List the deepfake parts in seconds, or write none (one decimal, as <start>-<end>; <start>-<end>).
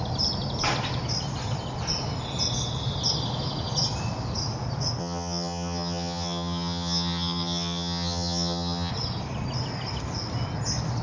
5.0-8.9